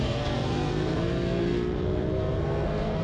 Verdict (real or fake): fake